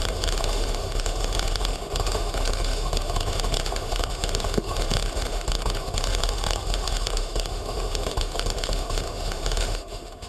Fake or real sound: fake